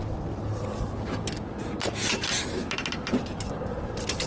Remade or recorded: recorded